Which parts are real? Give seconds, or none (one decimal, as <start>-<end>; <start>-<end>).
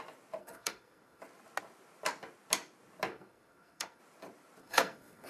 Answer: 0.0-0.4; 1.2-3.1; 4.0-4.6